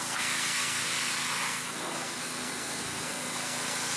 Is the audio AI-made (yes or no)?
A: yes